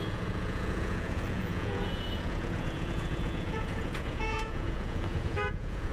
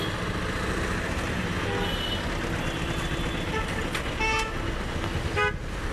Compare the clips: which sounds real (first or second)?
second